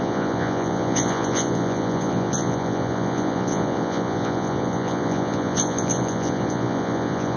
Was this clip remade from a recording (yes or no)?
yes